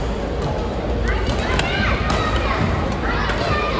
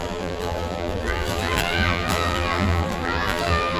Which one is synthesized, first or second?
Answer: second